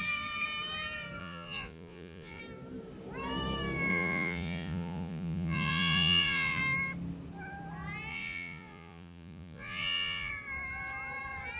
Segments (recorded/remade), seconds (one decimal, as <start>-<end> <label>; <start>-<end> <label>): 0.0-1.2 recorded; 1.2-2.4 remade; 2.4-3.9 recorded; 3.9-6.6 remade; 6.6-8.1 recorded; 8.1-10.3 remade; 10.3-11.6 recorded